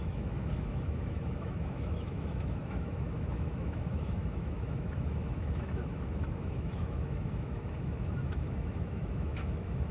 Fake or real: fake